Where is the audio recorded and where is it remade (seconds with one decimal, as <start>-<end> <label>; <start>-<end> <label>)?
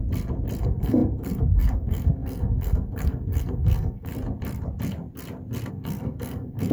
0.0-0.6 recorded; 0.6-4.1 remade; 4.1-5.7 recorded; 5.7-6.7 remade